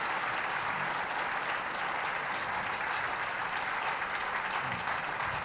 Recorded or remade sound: recorded